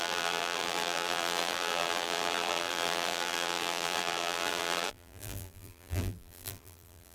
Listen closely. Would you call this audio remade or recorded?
remade